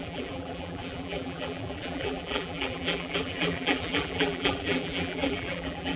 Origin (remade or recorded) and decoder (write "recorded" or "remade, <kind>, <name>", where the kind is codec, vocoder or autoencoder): remade, vocoder, BigVGAN v2